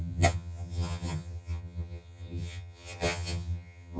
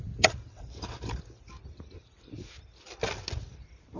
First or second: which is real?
second